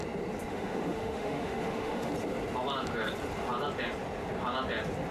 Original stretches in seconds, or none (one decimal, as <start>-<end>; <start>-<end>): 0.0-0.5; 2.1-5.1